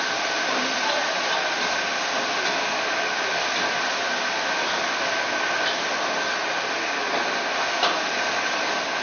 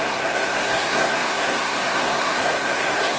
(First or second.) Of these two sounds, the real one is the first